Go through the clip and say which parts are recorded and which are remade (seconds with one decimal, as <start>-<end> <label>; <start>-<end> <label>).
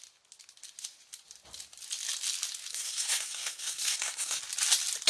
0.0-2.7 recorded; 2.7-4.4 remade; 4.4-5.1 recorded